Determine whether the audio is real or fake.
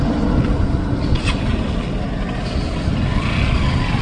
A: real